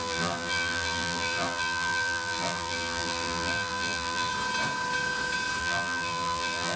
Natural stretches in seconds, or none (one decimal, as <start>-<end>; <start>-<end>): 4.3-5.6